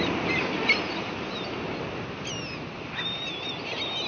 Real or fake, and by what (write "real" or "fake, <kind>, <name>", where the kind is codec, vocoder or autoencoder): real